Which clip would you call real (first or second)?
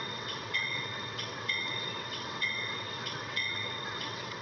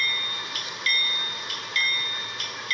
second